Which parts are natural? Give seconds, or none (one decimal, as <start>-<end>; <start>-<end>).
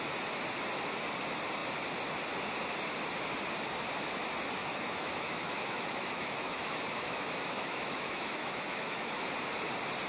0.0-4.6; 9.2-10.1